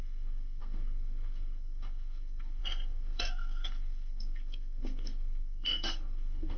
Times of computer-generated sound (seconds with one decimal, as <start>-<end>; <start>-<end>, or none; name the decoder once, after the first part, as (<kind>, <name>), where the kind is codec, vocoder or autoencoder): 0.0-6.6 (codec, SNAC)